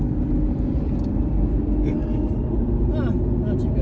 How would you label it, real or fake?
real